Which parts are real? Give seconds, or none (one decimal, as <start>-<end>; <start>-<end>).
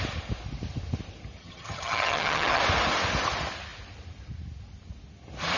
0.0-1.4; 2.6-5.6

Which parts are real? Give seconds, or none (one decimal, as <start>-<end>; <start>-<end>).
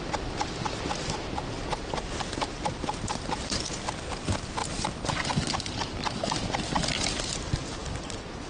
0.0-8.5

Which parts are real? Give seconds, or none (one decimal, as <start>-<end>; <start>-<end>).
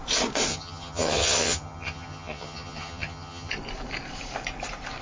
0.0-0.5; 3.5-5.0